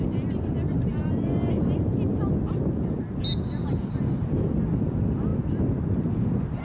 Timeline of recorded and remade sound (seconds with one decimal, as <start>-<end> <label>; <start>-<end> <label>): 0.0-6.6 recorded

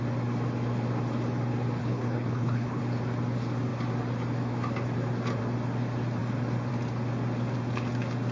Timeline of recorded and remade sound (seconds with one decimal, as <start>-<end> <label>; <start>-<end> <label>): 0.0-1.8 recorded; 1.8-2.8 remade; 2.8-8.3 recorded